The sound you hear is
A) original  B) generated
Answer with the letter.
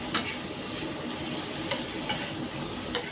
A